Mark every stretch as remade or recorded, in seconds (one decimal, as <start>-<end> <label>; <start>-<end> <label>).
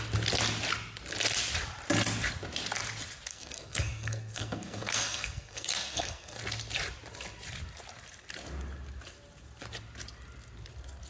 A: 0.0-3.3 recorded; 3.3-6.4 remade; 6.4-11.1 recorded